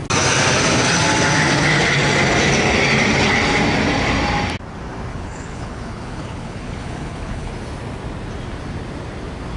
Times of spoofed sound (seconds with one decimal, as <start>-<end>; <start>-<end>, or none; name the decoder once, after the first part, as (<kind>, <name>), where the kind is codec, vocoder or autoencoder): 5.1-7.5 (codec, HILCodec)